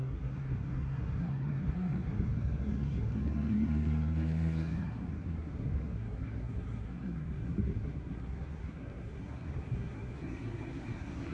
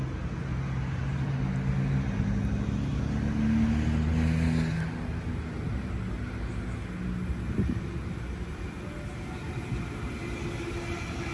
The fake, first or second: first